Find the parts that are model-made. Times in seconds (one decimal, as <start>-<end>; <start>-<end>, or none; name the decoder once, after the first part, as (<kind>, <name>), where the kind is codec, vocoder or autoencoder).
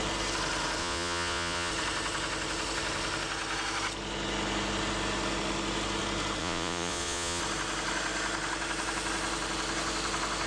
0.8-1.7 (vocoder, Vocos); 6.4-7.4